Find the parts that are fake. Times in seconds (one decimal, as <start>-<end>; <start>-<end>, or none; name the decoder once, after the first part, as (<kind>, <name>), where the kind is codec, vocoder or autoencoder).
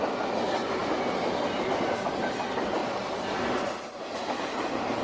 none